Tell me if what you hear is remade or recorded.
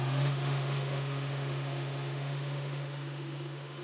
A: remade